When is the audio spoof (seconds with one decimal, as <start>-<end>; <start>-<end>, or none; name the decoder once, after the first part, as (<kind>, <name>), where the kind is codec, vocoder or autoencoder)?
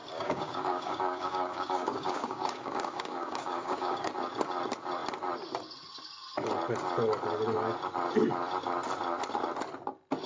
0.0-4.1 (codec, DAC)